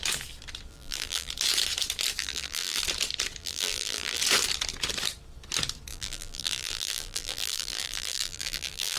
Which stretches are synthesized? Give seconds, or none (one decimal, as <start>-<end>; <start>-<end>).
0.7-1.3; 2.2-2.8; 3.4-4.2; 5.9-9.0